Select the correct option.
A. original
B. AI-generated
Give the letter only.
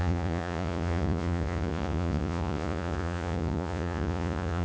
B